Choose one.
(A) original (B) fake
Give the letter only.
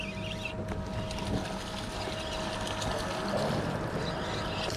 A